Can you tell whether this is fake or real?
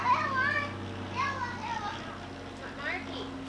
real